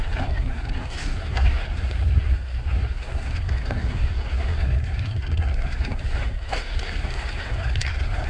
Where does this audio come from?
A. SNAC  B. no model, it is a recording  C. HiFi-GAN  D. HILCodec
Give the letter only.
A